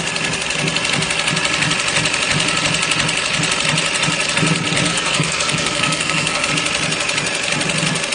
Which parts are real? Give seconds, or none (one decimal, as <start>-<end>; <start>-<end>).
0.0-4.9; 6.5-8.1